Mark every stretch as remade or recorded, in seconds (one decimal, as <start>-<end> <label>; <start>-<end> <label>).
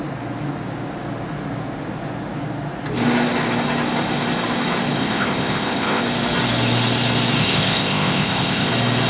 0.0-5.0 recorded; 5.0-6.0 remade; 6.0-7.4 recorded; 7.4-8.7 remade; 8.7-9.1 recorded